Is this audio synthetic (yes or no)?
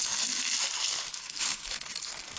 yes